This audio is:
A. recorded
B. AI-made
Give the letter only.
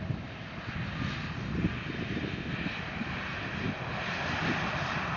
A